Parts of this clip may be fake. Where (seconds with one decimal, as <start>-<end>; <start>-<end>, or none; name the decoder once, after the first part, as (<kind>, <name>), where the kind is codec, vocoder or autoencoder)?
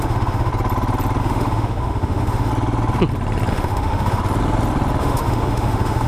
0.0-0.5 (autoencoder, DAC-VAE); 1.2-2.5; 3.5-4.2; 5.0-6.1